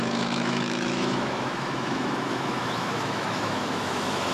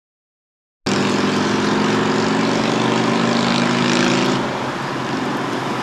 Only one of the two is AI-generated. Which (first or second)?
first